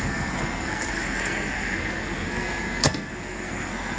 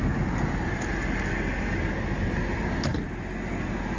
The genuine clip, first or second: second